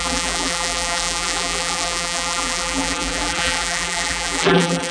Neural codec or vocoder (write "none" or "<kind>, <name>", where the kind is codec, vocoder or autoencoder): vocoder, BigVGAN v2